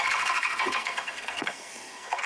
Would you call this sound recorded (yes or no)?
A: no